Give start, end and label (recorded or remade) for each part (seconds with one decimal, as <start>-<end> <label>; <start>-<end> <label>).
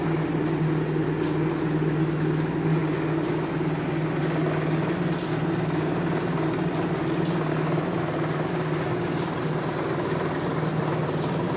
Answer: 0.0-11.6 recorded